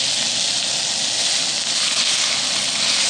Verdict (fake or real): real